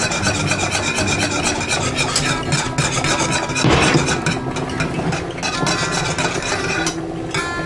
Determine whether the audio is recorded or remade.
recorded